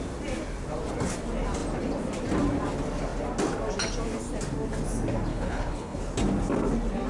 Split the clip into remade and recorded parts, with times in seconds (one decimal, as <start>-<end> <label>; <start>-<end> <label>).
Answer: 0.0-5.3 recorded; 5.3-6.0 remade; 6.0-7.1 recorded